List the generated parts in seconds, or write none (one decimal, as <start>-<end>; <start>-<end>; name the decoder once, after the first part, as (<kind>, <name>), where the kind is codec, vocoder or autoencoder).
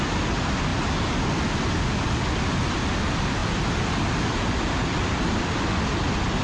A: none